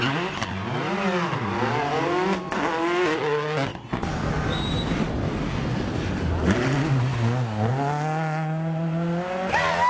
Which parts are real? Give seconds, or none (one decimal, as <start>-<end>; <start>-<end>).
0.0-9.9